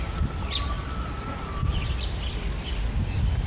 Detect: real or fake real